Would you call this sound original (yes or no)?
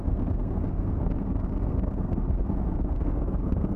no